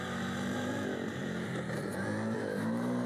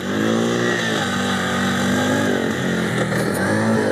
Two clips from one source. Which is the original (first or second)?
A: second